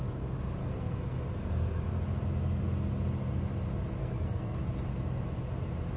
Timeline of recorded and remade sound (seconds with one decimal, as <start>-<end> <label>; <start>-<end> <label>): 0.0-0.6 recorded; 0.6-1.2 remade; 1.2-4.0 recorded; 4.0-4.6 remade; 4.6-6.0 recorded